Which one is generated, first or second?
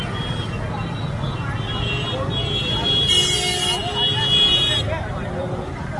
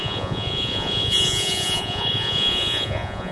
second